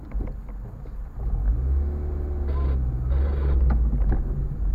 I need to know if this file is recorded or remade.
recorded